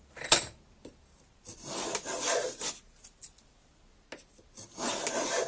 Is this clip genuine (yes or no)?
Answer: yes